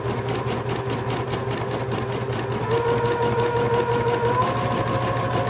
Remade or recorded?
recorded